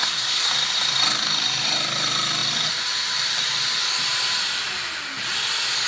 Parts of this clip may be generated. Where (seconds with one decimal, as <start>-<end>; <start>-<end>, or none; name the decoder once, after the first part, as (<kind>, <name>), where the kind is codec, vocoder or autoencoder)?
0.0-0.5 (codec, SNAC)